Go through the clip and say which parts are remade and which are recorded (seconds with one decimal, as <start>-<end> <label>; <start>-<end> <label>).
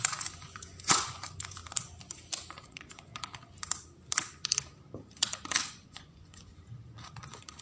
0.0-1.6 remade; 1.6-2.6 recorded; 2.6-3.1 remade; 3.1-5.7 recorded; 5.7-6.5 remade; 6.5-7.6 recorded